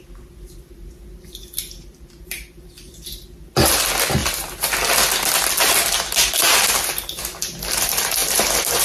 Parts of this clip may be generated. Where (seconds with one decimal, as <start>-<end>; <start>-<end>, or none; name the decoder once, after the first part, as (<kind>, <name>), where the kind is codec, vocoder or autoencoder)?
none